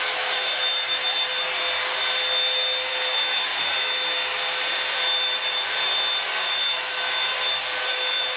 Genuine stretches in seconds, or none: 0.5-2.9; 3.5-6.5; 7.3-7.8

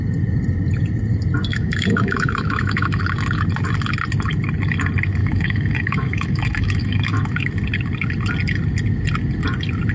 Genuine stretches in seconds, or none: 0.0-1.5; 3.0-5.2; 7.5-9.9